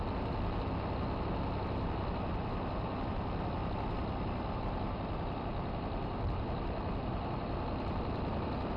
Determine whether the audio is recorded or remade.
recorded